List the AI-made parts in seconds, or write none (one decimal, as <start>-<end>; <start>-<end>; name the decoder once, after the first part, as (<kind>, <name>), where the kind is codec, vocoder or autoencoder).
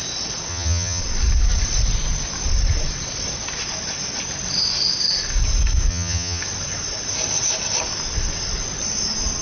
0.5-1.0 (vocoder, HiFi-GAN); 5.9-6.4